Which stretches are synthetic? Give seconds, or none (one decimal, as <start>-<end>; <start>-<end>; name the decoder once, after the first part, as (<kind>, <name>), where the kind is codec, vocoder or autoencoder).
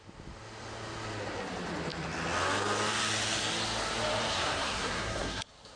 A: 4.3-5.8 (codec, SNAC)